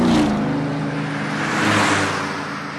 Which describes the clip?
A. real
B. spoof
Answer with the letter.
A